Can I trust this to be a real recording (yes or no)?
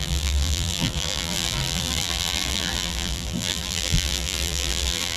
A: no